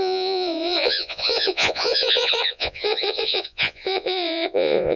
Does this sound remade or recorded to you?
remade